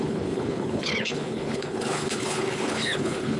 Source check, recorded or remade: remade